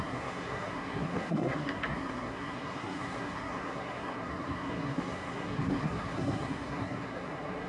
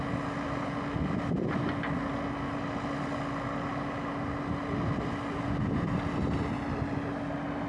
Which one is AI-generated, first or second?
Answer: first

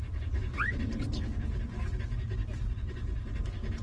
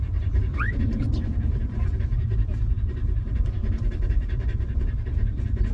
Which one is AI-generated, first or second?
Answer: second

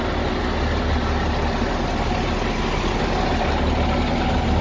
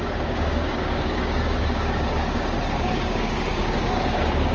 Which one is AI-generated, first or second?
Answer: second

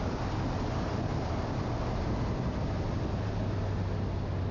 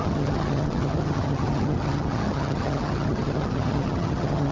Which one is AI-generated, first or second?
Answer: second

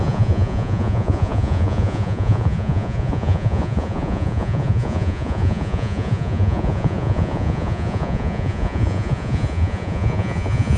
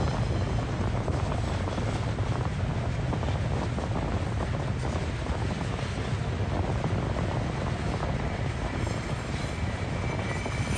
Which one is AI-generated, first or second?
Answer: first